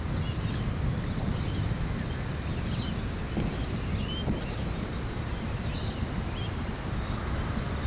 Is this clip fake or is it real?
real